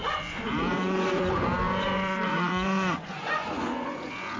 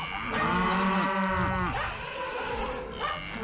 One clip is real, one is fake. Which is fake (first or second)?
first